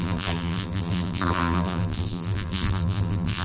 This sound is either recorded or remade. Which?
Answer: remade